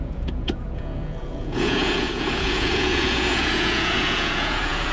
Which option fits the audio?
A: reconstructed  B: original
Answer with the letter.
A